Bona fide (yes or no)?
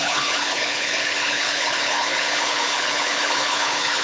no